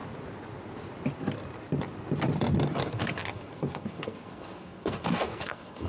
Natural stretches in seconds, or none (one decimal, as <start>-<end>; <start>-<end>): 0.0-2.8